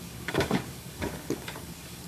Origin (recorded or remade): remade